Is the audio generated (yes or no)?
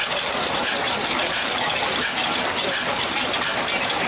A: no